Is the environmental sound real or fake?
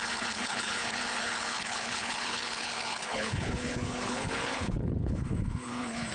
fake